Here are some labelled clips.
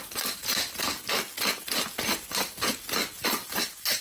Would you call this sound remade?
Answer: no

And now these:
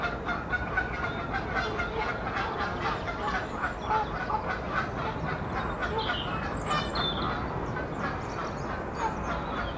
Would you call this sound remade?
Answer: no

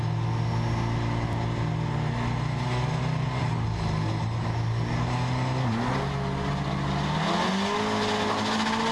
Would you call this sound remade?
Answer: no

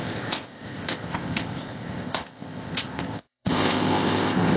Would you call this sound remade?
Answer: yes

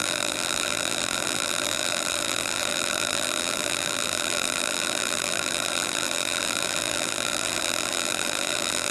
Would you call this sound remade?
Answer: yes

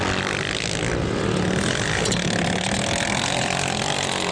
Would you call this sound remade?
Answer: no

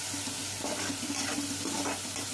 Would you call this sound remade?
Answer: no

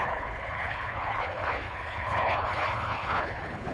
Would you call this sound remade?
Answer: yes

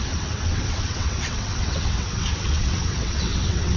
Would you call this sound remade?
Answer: yes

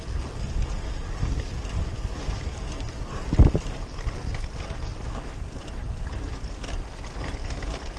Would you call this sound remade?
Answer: no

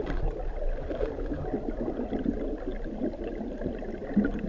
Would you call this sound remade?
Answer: no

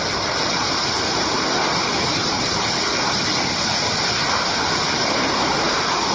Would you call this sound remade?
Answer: no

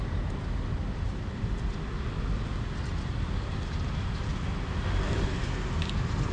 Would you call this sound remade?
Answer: no